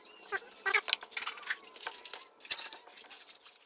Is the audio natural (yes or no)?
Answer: yes